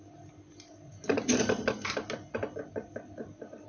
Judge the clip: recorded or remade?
recorded